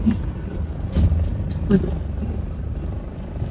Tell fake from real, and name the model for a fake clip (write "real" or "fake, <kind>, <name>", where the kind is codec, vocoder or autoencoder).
real